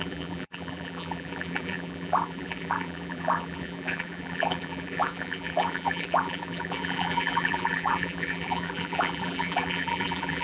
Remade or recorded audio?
remade